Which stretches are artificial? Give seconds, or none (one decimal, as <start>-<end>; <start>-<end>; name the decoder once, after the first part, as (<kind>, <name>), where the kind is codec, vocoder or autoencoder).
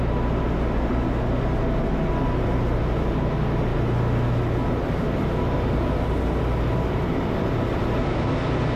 none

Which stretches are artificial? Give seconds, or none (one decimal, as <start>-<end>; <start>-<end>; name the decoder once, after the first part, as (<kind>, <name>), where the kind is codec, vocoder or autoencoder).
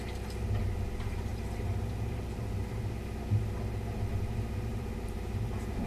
1.3-2.9 (vocoder, BigVGAN v2); 4.7-5.9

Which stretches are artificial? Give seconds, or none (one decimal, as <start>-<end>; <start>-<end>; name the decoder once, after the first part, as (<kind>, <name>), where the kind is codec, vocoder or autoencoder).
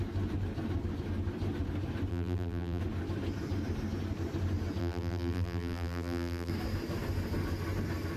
2.1-2.8 (vocoder, BigVGAN v2); 4.8-6.5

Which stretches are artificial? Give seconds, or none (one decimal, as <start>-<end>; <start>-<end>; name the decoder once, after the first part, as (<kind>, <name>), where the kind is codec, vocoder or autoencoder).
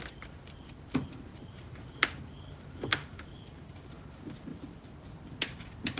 1.3-1.9 (vocoder, BigVGAN v2); 2.9-3.6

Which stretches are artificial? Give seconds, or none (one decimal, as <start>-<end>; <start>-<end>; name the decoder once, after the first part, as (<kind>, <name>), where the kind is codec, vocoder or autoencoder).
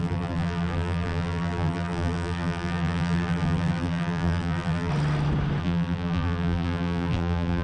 0.0-4.9 (vocoder, BigVGAN v2); 5.6-7.6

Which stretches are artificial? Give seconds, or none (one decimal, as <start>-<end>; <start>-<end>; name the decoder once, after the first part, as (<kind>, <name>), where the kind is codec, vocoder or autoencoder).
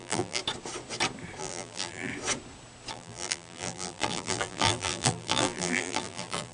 0.0-0.4 (vocoder, BigVGAN v2); 1.4-2.1; 2.9-6.5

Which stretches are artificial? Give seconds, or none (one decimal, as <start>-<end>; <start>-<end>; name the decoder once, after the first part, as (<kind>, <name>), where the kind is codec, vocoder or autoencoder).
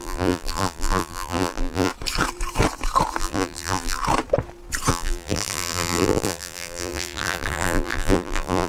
0.0-1.9 (vocoder, BigVGAN v2); 3.2-4.0; 4.9-8.7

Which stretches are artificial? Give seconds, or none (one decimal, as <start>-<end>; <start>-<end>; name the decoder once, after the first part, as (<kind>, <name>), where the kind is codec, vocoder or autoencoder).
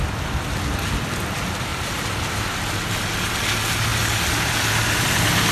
1.7-2.3 (vocoder, BigVGAN v2)